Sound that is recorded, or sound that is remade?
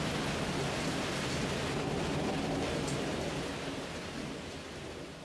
recorded